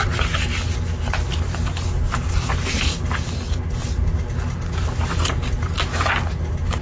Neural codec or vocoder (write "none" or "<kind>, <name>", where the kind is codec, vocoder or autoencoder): none